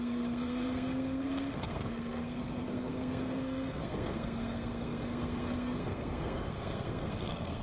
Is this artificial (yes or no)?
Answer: yes